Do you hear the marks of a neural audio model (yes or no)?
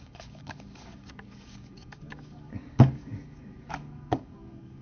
yes